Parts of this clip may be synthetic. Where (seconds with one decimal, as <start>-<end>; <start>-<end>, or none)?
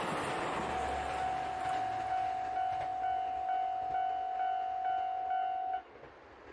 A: none